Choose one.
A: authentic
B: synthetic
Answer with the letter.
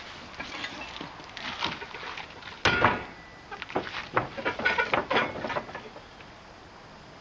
A